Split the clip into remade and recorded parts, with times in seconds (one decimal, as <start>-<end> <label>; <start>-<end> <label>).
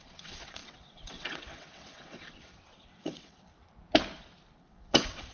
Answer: 0.0-3.5 remade; 3.5-4.6 recorded; 4.6-5.3 remade